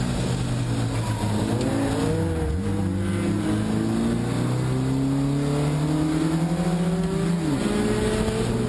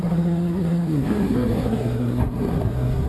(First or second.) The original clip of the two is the first